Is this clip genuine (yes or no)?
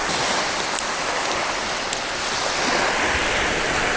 yes